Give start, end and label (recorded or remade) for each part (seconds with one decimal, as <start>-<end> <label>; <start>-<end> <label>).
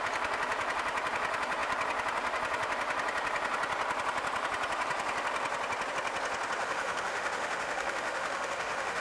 0.0-6.6 recorded; 6.6-9.0 remade